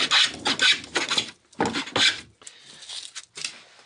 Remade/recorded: recorded